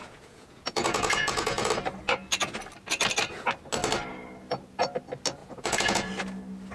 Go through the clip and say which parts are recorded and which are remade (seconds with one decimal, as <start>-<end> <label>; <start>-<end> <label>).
0.0-1.7 remade; 1.7-5.4 recorded; 5.4-6.1 remade; 6.1-6.7 recorded